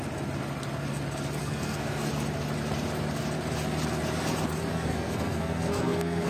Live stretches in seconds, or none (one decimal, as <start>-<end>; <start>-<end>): 0.0-1.4; 2.1-4.7